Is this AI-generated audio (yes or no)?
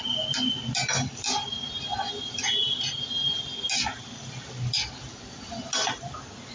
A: no